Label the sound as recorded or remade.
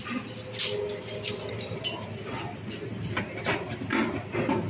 recorded